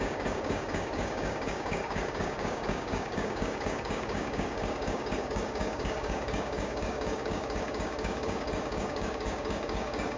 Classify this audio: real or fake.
fake